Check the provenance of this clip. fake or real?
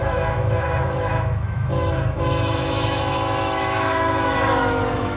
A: fake